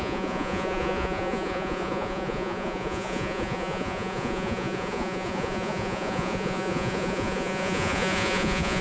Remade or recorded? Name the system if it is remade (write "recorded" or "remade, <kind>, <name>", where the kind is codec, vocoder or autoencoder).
remade, vocoder, Vocos